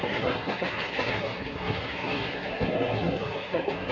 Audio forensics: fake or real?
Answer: fake